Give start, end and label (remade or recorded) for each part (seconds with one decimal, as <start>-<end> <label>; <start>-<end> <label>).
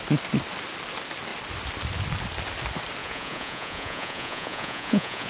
0.0-3.0 recorded; 3.0-5.3 remade